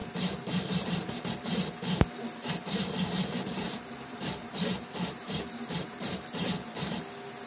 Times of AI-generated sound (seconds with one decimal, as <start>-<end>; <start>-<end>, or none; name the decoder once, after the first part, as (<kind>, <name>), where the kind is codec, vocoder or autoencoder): 0.0-1.3 (vocoder, BigVGAN v2); 3.5-7.0